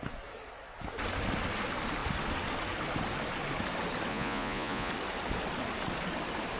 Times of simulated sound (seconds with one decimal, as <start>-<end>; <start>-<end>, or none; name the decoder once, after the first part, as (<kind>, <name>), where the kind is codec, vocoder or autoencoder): 4.1-4.9 (vocoder, Vocos)